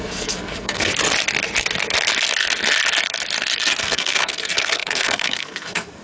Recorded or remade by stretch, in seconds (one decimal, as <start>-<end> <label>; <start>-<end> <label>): 0.0-0.9 remade; 0.9-3.8 recorded; 3.8-6.0 remade